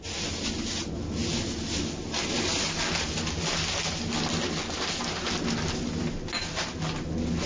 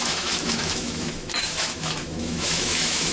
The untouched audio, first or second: first